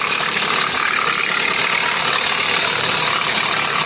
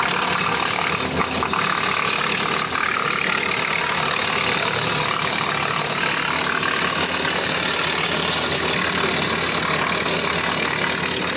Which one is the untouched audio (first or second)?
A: second